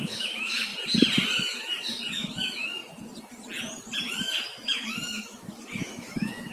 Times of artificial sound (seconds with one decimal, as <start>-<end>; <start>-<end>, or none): 0.0-0.7; 1.4-2.8; 4.0-6.5